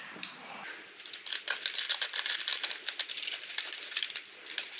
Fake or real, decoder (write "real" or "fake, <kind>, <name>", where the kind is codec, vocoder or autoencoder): real